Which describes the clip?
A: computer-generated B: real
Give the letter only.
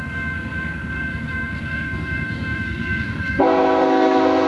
A